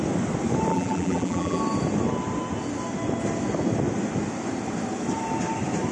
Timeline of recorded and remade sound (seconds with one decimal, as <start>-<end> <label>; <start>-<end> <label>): 0.0-0.7 recorded; 0.7-1.6 remade; 1.6-5.9 recorded

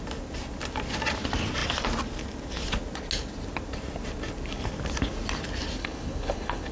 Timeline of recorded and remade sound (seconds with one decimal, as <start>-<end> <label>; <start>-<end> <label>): 0.0-5.8 recorded; 5.8-6.7 remade

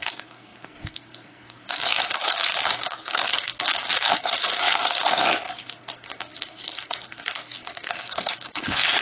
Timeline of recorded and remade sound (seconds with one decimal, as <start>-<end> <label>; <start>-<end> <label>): 0.0-9.0 remade